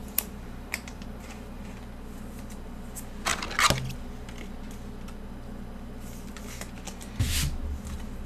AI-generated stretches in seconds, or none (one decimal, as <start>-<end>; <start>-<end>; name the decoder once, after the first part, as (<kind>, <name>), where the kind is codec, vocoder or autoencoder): 0.0-1.6 (vocoder, BigVGAN v2)